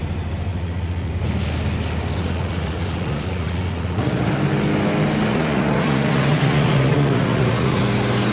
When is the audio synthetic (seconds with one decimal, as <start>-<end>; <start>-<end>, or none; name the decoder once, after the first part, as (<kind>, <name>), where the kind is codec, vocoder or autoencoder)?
0.5-1.1 (vocoder, Vocos); 2.2-4.3; 5.3-7.8